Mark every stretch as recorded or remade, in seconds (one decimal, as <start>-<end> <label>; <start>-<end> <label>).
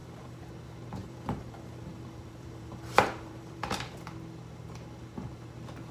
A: 0.0-0.5 remade; 0.5-1.0 recorded; 1.0-4.0 remade; 4.0-5.9 recorded